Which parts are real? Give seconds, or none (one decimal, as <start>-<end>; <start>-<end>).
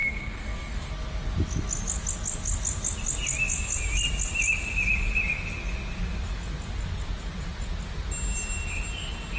0.9-9.4